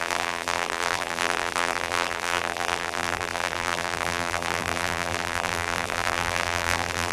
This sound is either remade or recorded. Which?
remade